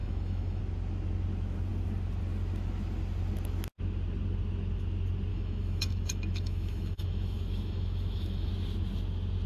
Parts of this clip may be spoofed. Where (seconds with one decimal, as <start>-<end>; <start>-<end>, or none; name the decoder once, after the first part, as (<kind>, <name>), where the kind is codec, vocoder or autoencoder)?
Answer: 0.0-0.6 (autoencoder, DAC-VAE); 5.3-8.5